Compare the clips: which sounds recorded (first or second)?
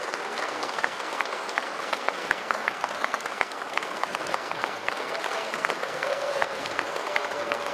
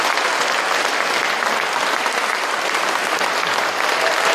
second